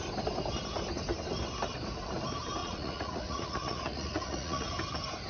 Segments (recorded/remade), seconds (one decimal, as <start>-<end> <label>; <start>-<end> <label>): 0.0-2.6 recorded; 2.6-4.7 remade; 4.7-5.3 recorded